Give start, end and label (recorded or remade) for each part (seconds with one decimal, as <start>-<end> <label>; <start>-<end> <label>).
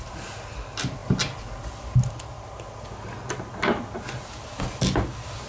0.0-5.5 recorded